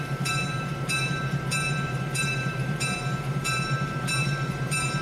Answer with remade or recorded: remade